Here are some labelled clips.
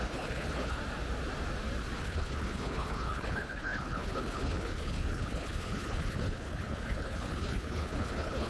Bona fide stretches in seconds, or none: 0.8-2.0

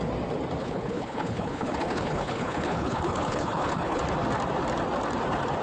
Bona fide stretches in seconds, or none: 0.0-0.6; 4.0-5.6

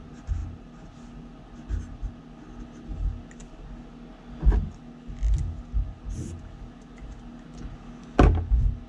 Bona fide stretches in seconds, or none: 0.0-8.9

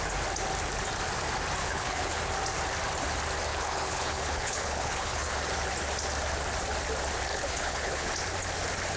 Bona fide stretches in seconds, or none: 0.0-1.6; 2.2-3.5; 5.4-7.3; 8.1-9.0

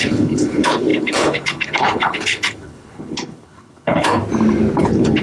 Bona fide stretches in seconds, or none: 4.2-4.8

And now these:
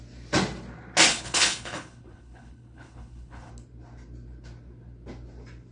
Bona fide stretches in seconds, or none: 0.0-1.1; 3.5-5.7

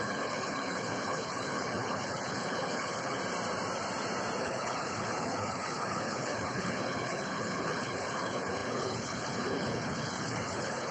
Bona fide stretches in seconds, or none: 3.2-4.4

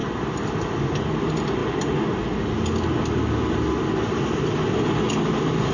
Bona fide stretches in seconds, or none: 0.0-5.7